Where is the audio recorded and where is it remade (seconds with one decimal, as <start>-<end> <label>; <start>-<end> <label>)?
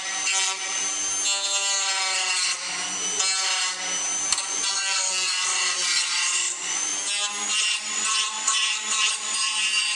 0.0-0.8 remade; 0.8-4.4 recorded; 4.4-6.9 remade; 6.9-7.5 recorded; 7.5-9.9 remade